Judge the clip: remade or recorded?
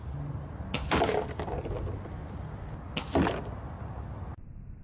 recorded